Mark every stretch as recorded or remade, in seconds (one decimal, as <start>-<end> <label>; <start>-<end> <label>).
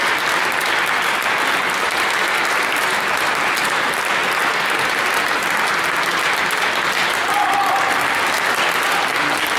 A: 0.0-9.6 recorded